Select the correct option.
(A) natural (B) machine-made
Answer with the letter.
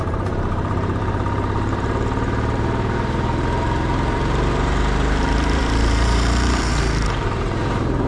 B